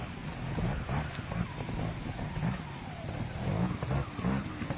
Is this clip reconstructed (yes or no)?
no